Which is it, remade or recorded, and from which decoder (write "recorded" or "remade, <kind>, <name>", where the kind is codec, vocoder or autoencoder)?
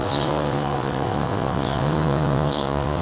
remade, vocoder, WaveNeXt